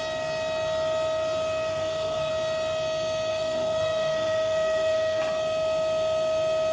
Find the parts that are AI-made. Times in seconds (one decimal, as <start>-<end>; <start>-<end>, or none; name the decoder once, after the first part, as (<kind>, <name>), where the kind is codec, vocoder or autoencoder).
1.7-2.3 (codec, SNAC); 3.3-5.2